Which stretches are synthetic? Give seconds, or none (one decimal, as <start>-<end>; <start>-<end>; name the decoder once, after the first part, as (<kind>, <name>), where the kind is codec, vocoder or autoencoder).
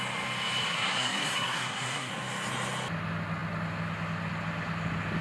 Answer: 0.7-2.1 (codec, SNAC)